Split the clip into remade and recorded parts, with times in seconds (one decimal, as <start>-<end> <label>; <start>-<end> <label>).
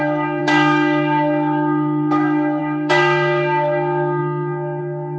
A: 0.0-5.2 remade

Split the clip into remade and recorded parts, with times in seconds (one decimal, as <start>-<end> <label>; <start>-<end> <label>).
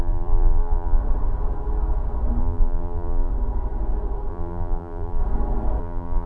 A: 0.0-1.0 remade; 1.0-2.4 recorded; 2.4-3.3 remade; 3.3-4.3 recorded; 4.3-5.2 remade; 5.2-5.8 recorded; 5.8-6.3 remade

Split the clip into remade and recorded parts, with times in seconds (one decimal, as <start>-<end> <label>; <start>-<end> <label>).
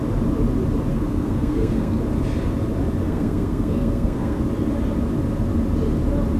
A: 0.0-0.9 recorded; 0.9-2.0 remade; 2.0-3.0 recorded; 3.0-4.4 remade; 4.4-6.4 recorded